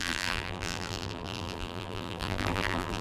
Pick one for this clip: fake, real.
fake